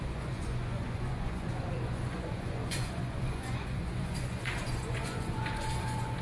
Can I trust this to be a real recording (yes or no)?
no